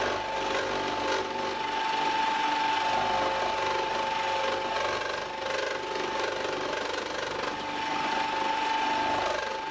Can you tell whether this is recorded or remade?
recorded